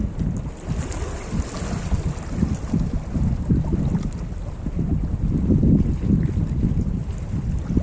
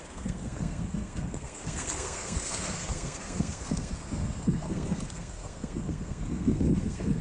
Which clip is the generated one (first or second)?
second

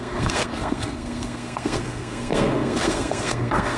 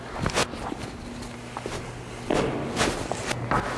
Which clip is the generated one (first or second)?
first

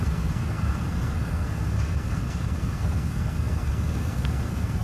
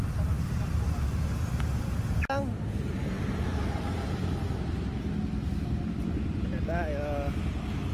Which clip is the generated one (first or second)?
first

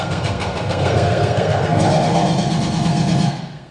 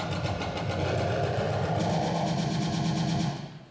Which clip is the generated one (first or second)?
first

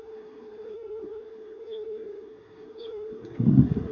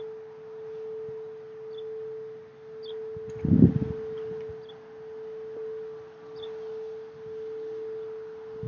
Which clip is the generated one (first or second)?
first